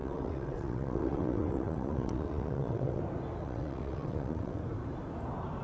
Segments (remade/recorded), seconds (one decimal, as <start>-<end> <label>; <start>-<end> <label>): 0.0-3.0 remade; 3.0-3.4 recorded; 3.4-4.6 remade; 4.6-5.6 recorded